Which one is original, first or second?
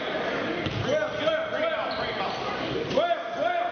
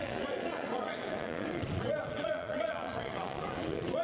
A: first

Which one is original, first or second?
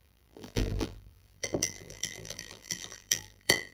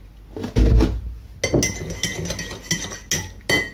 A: second